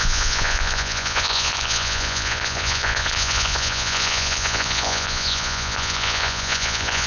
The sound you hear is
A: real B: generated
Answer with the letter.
B